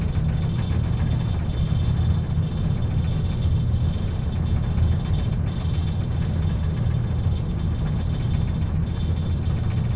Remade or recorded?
recorded